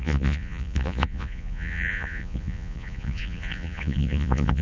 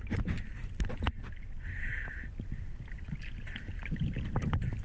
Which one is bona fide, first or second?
second